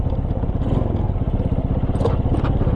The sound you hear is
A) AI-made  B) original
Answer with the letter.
B